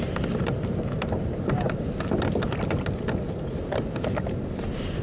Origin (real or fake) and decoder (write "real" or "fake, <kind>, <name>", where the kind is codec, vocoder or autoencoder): real